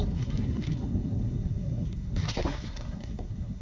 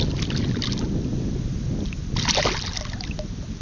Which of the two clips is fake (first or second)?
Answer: first